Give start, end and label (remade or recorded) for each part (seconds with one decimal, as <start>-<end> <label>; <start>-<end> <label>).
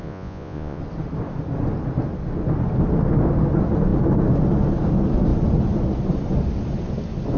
0.0-0.8 remade; 0.8-7.4 recorded